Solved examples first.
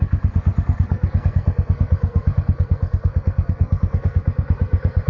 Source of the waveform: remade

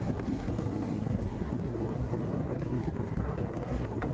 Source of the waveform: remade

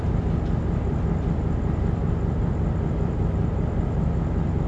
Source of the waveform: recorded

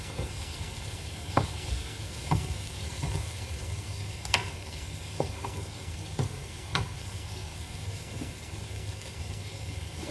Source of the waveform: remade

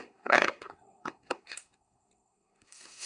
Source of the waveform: remade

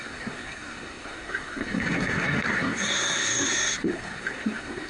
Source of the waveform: remade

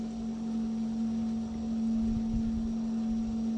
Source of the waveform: recorded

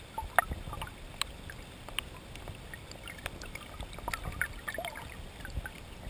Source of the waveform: recorded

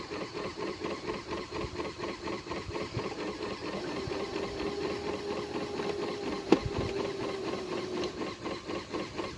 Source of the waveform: recorded